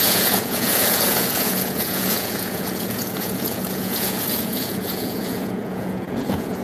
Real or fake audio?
fake